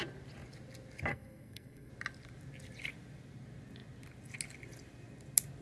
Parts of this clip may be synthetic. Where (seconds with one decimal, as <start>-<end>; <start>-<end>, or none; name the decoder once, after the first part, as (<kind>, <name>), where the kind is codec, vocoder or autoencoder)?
1.1-1.9 (codec, SNAC)